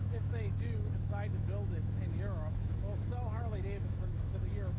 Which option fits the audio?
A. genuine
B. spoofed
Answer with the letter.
B